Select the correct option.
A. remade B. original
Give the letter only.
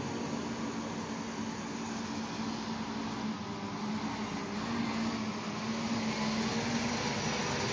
B